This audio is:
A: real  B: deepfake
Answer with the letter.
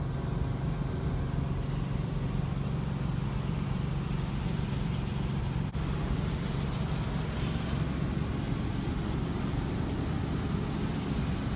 A